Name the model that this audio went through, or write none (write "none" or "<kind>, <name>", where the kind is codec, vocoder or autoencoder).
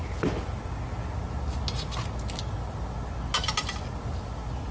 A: none